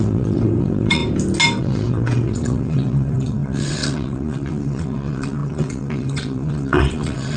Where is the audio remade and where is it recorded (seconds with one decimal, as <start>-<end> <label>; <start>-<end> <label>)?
0.0-1.0 remade; 1.0-1.6 recorded; 1.6-7.4 remade